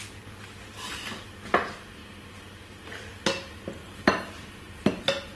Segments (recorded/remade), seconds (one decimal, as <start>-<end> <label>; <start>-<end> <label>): 0.0-3.8 recorded; 3.8-4.8 remade; 4.8-5.4 recorded